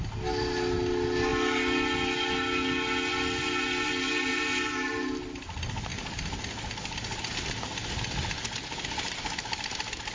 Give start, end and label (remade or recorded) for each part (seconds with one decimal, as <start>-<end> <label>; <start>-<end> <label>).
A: 0.0-10.1 recorded